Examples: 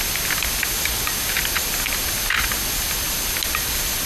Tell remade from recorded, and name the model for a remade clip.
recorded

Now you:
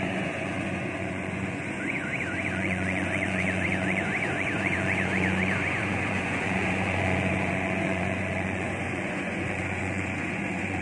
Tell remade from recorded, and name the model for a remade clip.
remade, vocoder, Vocos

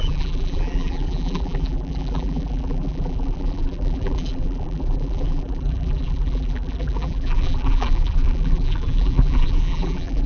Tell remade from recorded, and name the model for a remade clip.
remade, vocoder, BigVGAN v2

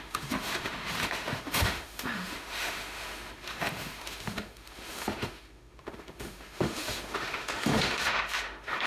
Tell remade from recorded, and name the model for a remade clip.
remade, autoencoder, DAC-VAE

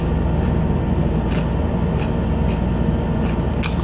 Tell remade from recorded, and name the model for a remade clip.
recorded